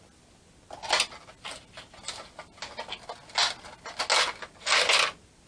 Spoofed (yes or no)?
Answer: no